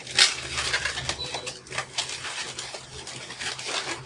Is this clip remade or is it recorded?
recorded